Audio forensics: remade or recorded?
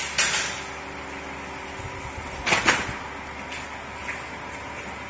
recorded